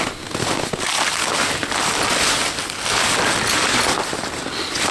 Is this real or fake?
real